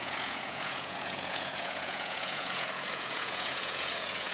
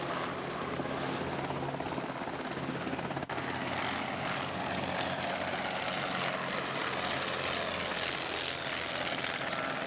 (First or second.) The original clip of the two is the second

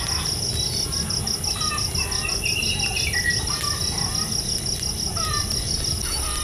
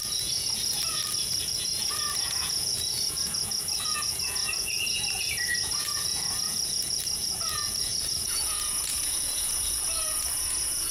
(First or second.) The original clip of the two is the first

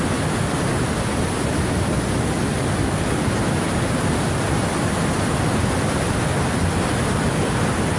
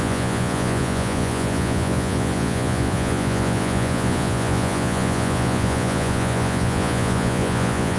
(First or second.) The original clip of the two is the first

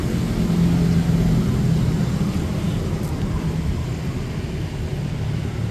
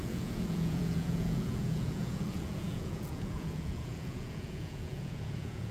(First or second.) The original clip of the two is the first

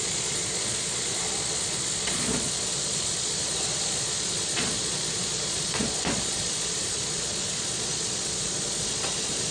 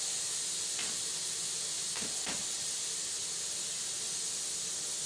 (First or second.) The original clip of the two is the second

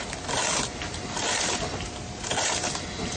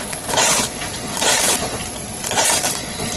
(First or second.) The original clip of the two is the first